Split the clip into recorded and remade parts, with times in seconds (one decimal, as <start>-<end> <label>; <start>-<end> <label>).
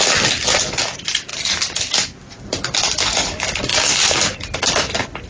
0.0-5.3 recorded